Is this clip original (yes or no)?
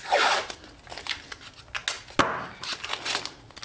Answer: yes